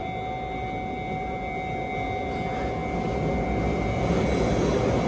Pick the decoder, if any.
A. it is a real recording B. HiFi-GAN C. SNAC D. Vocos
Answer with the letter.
A